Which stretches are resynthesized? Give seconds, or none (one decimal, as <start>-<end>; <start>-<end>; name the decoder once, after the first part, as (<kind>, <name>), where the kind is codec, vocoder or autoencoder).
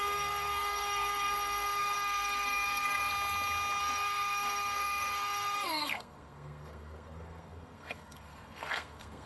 0.0-3.1 (codec, SNAC); 3.8-9.3